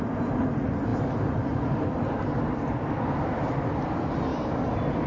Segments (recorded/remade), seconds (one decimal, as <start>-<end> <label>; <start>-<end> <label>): 0.0-5.1 recorded